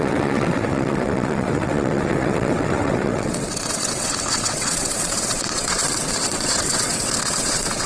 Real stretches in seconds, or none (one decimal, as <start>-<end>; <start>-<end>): none